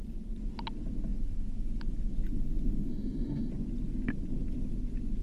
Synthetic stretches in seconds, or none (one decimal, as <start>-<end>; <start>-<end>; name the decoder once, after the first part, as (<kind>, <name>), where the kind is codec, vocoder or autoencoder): 2.9-3.5 (autoencoder, DAC-VAE)

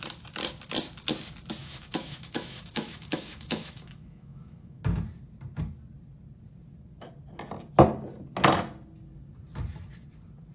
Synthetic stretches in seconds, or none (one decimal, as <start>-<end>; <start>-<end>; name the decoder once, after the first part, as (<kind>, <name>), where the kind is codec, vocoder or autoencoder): 1.6-4.8 (autoencoder, DAC-VAE)

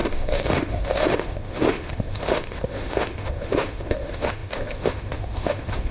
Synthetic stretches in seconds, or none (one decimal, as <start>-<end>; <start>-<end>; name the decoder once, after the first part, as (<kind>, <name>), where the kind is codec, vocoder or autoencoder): 0.0-5.9 (autoencoder, DAC-VAE)

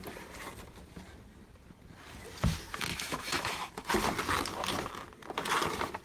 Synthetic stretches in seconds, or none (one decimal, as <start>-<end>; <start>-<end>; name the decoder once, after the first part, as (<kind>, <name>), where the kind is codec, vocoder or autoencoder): 2.9-3.9 (autoencoder, DAC-VAE)